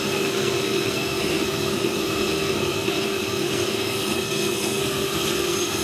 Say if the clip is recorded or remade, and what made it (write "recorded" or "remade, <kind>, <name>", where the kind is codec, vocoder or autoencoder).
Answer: remade, codec, SNAC